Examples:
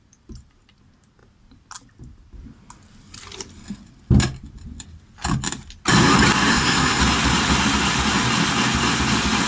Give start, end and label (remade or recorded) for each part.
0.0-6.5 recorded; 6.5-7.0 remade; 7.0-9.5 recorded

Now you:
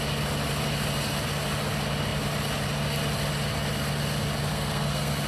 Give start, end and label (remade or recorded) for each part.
0.0-4.5 recorded; 4.5-5.3 remade

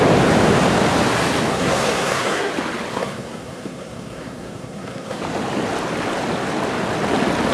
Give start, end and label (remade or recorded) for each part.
0.0-1.5 recorded; 1.5-2.5 remade; 2.5-2.9 recorded; 2.9-5.2 remade; 5.2-7.5 recorded

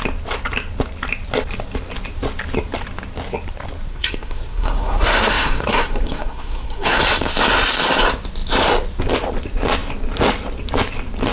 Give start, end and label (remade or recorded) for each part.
0.0-3.9 recorded; 3.9-7.0 remade; 7.0-11.3 recorded

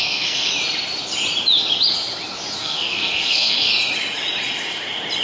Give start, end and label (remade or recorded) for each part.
0.0-0.5 remade; 0.5-2.6 recorded; 2.6-3.7 remade; 3.7-5.2 recorded

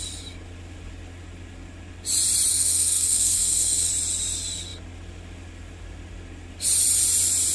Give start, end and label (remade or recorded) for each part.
0.0-2.5 recorded; 2.5-3.9 remade; 3.9-7.5 recorded

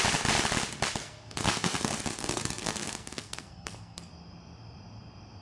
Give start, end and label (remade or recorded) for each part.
0.0-1.0 recorded; 1.0-4.1 remade; 4.1-5.4 recorded